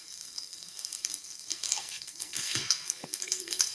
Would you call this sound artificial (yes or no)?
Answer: yes